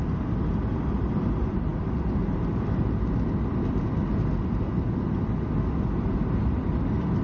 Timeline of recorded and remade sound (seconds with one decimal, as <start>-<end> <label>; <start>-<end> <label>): 0.0-7.2 recorded

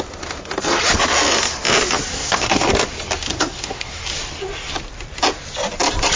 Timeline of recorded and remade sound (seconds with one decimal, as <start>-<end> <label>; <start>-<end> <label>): 0.0-2.1 recorded; 2.1-2.7 remade; 2.7-3.3 recorded; 3.3-4.0 remade; 4.0-6.2 recorded